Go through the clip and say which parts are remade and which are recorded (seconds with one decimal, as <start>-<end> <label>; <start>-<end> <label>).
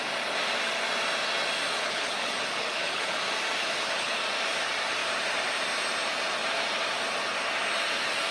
0.0-1.7 recorded; 1.7-3.2 remade; 3.2-3.6 recorded; 3.6-4.2 remade; 4.2-8.3 recorded